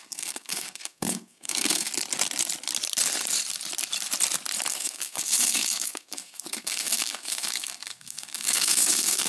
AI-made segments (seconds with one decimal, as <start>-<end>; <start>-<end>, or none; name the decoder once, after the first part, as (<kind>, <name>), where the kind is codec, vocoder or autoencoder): 0.0-1.9 (codec, SNAC); 4.7-9.3